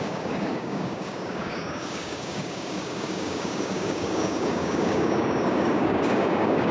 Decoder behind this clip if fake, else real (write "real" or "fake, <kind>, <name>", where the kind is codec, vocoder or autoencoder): fake, codec, DAC